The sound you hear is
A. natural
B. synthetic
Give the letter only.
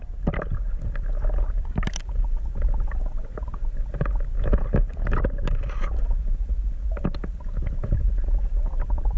A